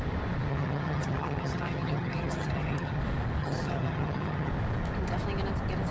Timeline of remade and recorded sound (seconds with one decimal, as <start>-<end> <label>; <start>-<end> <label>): 0.0-0.5 recorded; 0.5-3.0 remade; 3.0-3.4 recorded; 3.4-4.5 remade; 4.5-5.9 recorded